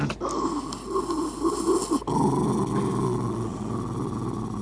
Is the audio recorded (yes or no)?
yes